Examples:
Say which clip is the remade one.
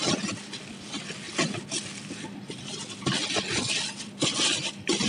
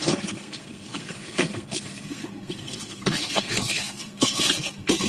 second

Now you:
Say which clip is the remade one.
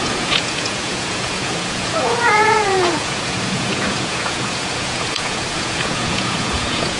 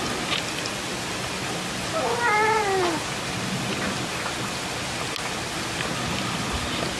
first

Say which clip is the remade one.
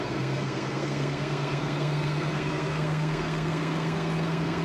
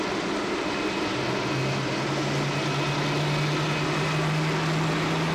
first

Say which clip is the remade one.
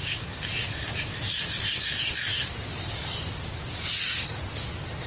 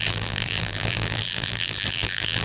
second